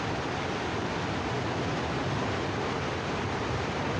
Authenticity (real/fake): real